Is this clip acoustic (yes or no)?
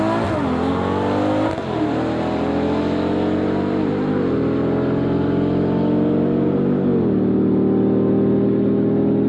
yes